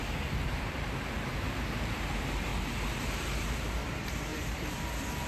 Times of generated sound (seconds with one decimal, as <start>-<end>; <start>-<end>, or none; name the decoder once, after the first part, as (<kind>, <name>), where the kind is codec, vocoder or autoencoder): 0.0-2.5 (vocoder, BigVGAN v2); 3.0-5.3